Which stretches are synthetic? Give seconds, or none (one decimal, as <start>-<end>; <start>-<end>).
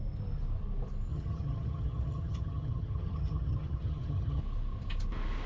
1.1-4.4